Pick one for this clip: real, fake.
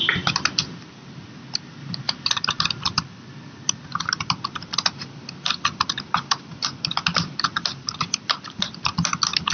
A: fake